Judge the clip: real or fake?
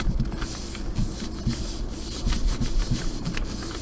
real